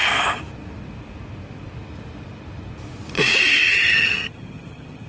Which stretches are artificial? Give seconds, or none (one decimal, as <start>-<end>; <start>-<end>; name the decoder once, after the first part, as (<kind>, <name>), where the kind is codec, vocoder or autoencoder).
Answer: 3.7-5.1 (vocoder, HiFi-GAN)